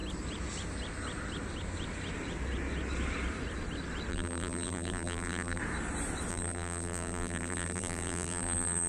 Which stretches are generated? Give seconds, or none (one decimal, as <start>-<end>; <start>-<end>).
4.1-5.6; 6.3-8.9